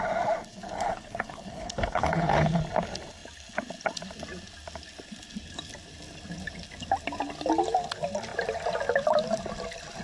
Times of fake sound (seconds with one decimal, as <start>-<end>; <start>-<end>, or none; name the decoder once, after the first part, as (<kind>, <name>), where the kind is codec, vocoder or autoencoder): 0.5-2.6 (codec, HILCodec)